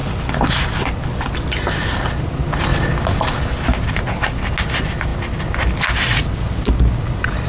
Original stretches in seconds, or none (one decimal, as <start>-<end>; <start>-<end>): 0.0-7.5